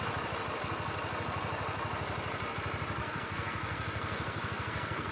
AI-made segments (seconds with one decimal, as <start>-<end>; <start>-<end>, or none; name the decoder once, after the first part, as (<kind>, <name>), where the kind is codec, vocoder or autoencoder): 3.0-5.1 (codec, SNAC)